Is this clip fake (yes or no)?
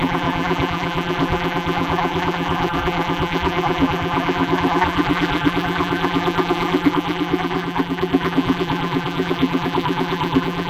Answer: yes